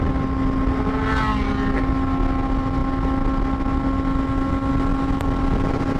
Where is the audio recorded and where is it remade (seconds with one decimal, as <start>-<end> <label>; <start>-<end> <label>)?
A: 0.0-4.9 recorded; 4.9-6.0 remade